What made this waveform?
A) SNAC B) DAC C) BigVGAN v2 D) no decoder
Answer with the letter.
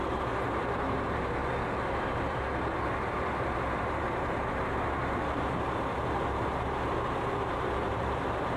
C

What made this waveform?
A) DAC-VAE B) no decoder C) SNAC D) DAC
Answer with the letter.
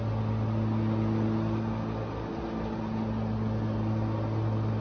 B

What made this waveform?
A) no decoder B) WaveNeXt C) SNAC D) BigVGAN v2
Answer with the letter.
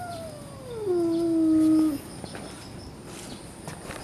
A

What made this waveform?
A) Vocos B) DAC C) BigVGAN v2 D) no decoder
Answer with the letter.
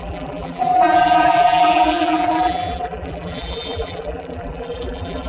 C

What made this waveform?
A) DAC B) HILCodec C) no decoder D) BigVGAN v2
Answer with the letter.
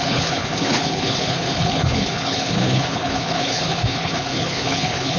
B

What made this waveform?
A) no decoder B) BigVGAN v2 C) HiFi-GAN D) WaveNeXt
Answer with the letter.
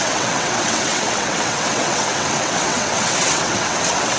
D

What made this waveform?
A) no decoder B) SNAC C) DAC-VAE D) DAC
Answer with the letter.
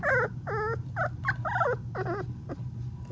A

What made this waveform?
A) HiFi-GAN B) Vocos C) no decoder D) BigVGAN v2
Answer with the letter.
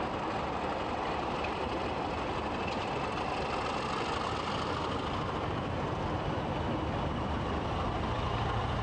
C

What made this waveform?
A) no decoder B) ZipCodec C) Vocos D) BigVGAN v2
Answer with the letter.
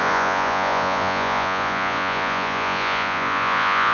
C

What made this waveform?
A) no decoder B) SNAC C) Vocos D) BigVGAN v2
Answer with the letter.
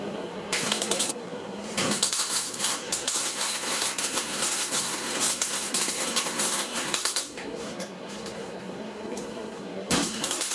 B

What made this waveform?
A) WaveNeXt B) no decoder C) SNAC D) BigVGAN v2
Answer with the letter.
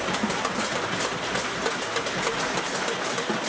B